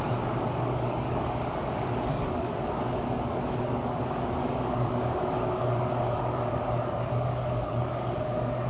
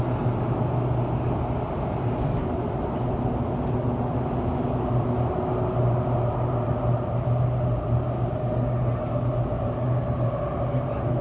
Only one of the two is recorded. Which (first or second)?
second